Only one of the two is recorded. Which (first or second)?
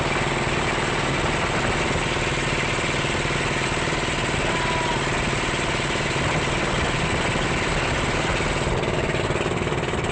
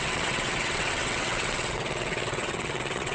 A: first